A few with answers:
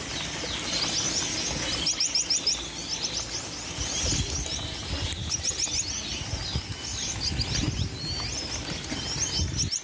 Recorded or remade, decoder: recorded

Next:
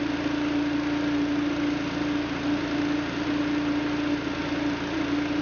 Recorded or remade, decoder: recorded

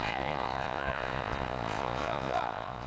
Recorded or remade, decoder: remade, vocoder, Vocos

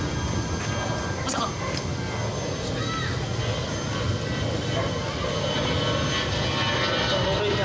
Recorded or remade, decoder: recorded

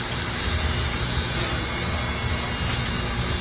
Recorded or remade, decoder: recorded